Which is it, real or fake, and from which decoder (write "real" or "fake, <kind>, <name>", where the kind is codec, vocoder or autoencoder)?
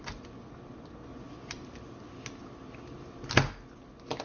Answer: real